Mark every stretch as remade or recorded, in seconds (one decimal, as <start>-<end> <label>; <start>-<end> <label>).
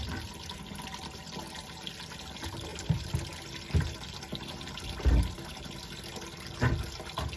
0.0-7.4 recorded